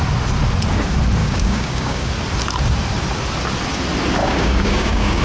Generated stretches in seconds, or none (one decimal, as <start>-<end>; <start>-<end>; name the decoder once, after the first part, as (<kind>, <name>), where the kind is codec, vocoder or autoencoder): 1.2-2.1 (codec, DAC); 4.2-5.2